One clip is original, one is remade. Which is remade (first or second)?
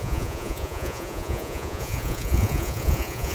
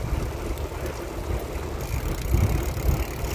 first